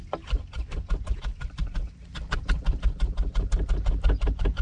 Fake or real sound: real